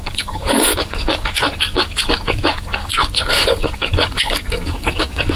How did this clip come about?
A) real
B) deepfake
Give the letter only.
B